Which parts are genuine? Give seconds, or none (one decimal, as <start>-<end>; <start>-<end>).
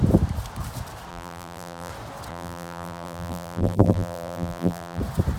0.0-1.1; 1.9-2.3; 5.0-5.4